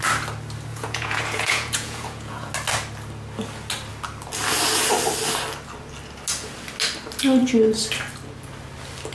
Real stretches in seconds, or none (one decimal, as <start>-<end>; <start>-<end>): 0.0-0.7; 2.5-9.1